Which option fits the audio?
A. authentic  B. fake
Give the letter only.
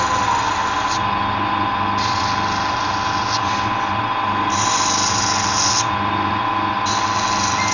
A